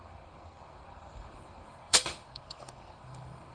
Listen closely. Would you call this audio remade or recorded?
remade